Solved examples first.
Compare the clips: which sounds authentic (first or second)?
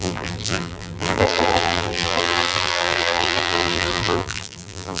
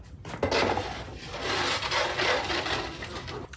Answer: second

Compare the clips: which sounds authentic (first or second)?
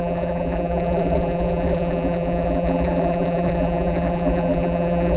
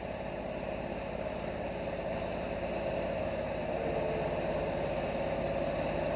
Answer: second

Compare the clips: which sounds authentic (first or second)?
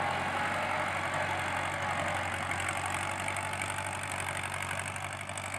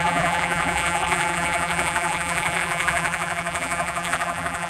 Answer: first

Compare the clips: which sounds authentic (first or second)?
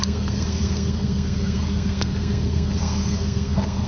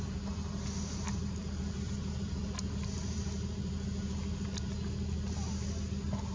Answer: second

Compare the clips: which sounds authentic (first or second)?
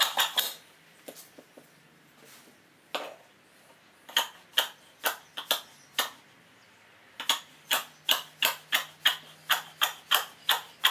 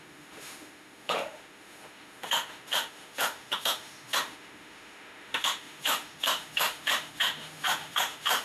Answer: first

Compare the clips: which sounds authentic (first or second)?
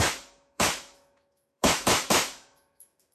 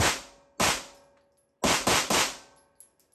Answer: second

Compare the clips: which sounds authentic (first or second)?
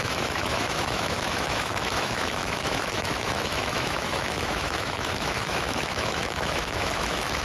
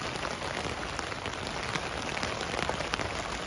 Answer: second